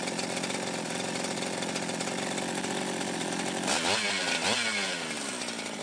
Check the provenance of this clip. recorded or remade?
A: recorded